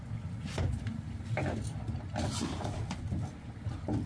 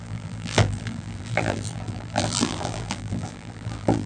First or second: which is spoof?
second